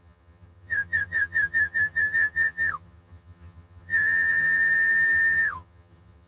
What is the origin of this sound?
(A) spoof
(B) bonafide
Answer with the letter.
A